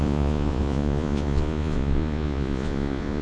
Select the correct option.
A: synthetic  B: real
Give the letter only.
A